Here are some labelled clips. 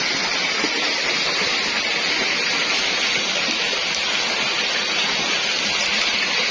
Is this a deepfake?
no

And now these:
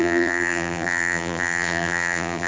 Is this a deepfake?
yes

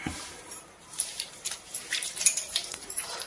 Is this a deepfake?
yes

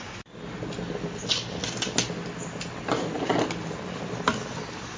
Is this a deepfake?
no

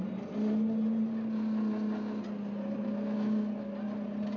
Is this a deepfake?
no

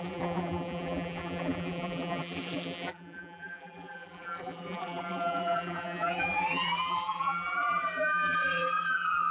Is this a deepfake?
yes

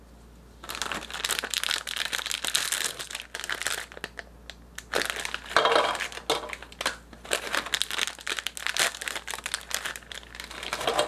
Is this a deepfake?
no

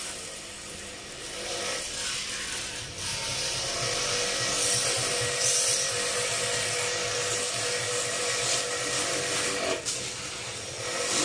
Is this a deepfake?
no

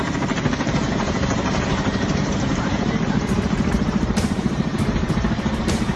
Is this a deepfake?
yes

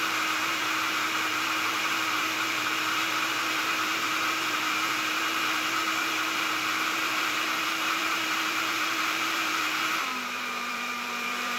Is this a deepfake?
yes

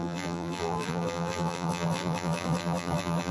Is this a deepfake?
yes